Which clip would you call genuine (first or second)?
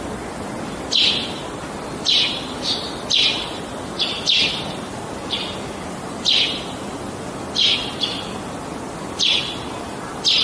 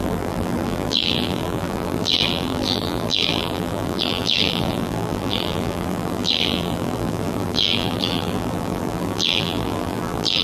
first